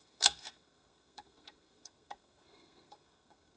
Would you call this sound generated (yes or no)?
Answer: yes